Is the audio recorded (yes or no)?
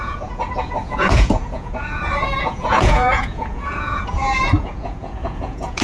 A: no